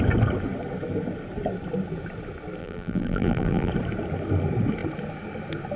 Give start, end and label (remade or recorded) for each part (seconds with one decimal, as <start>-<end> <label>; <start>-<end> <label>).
0.0-2.6 recorded; 2.6-3.7 remade; 3.7-5.8 recorded